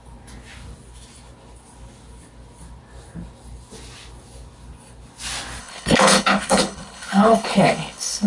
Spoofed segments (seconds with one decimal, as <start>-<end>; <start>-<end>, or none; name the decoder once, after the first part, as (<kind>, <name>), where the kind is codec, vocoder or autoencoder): 5.6-8.3 (codec, HILCodec)